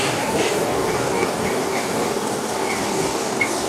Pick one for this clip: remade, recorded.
remade